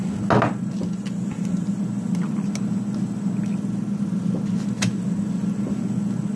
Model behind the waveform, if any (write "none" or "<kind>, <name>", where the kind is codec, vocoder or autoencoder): none